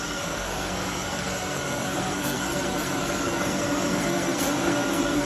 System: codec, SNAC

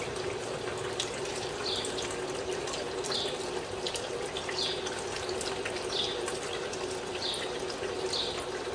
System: none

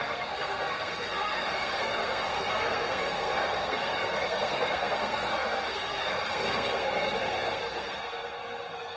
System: codec, SNAC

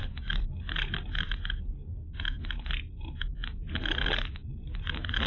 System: none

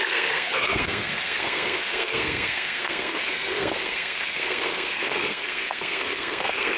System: codec, SNAC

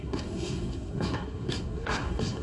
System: codec, SNAC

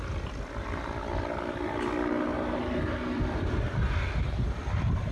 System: none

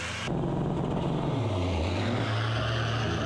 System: none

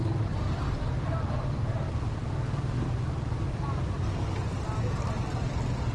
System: none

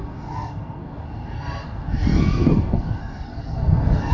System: codec, SNAC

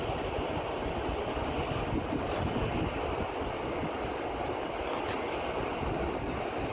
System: none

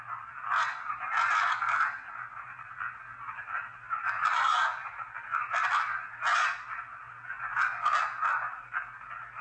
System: none